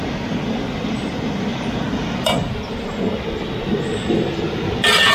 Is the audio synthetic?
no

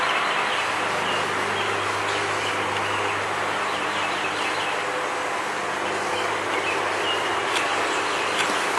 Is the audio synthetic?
no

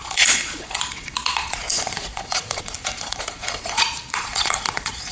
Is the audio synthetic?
yes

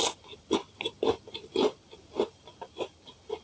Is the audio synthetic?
no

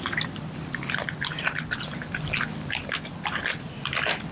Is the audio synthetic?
no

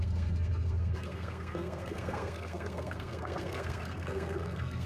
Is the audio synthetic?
yes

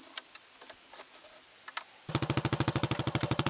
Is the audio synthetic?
no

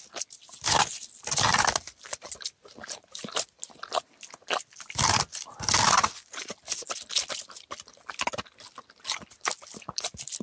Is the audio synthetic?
no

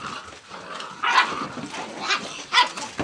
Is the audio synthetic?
no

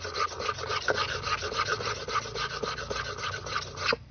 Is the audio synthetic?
yes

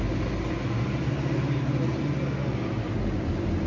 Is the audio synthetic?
no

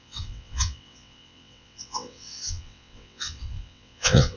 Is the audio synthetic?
yes